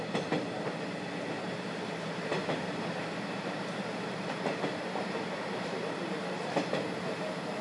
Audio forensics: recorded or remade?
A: remade